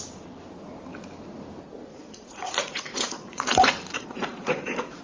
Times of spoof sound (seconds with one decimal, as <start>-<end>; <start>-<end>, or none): 1.9-5.0